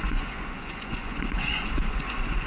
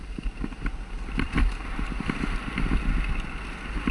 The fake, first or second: first